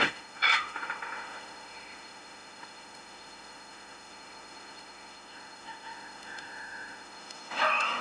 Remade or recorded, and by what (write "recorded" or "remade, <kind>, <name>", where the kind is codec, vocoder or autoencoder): remade, autoencoder, DAC-VAE